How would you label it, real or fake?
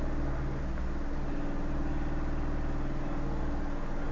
real